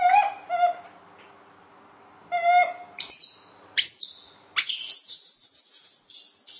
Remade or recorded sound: recorded